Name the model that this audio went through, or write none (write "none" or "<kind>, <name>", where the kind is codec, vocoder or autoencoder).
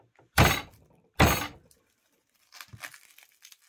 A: none